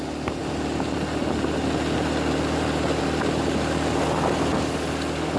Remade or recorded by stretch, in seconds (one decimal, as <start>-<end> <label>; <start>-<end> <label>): 0.0-5.4 recorded